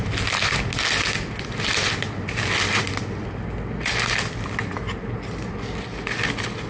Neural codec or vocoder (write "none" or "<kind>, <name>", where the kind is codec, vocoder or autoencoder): none